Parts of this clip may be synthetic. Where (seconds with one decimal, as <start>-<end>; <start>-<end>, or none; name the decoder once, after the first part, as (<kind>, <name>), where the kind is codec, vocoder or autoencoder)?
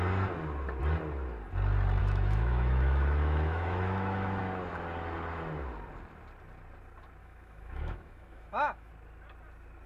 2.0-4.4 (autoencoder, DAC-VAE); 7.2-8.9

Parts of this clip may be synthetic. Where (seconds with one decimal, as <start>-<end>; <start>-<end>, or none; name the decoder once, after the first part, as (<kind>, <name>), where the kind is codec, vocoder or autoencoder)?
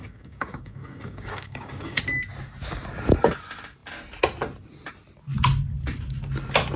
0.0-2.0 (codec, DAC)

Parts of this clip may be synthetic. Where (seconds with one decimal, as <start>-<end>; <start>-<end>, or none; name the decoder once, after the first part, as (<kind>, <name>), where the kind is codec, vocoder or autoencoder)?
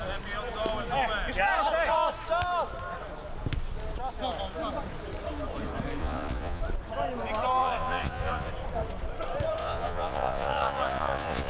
6.0-6.6 (vocoder, Vocos); 7.6-8.5; 9.6-11.5